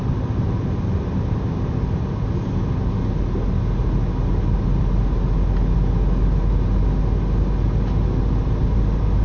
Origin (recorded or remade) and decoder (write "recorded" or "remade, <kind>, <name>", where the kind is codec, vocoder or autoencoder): recorded